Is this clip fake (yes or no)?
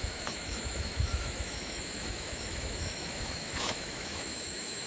yes